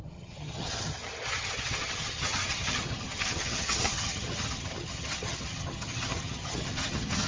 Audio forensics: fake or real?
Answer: fake